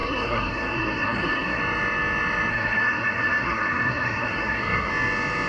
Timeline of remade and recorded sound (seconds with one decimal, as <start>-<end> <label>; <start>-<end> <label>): 0.0-1.6 remade; 1.6-2.5 recorded; 2.5-4.9 remade; 4.9-5.5 recorded